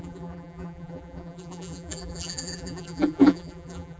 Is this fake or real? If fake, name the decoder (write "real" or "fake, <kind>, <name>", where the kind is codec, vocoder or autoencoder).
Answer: fake, vocoder, BigVGAN v2